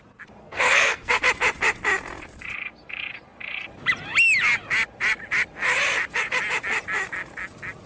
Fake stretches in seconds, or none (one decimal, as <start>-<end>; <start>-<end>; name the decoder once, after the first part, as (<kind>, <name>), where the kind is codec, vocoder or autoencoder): 0.4-1.2 (codec, SNAC)